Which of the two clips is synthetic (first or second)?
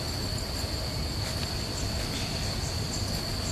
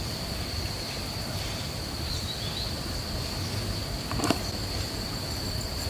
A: second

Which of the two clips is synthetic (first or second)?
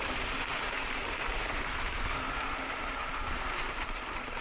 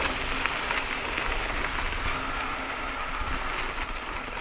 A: first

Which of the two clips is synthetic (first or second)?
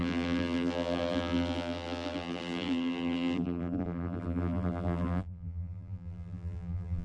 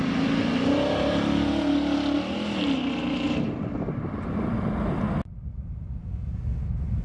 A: first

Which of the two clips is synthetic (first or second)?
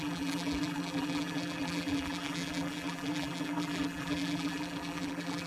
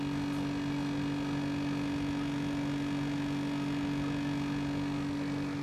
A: first